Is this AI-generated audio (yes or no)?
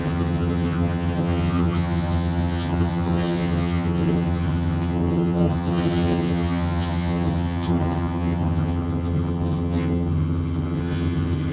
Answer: yes